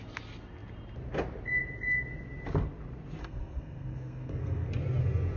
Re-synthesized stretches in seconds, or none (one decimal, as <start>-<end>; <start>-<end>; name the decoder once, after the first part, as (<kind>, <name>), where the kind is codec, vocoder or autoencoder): 3.2-4.7 (codec, SNAC)